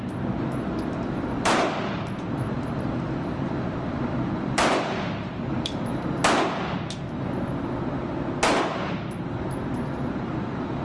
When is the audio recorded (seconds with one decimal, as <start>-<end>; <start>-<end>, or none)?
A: 6.2-10.3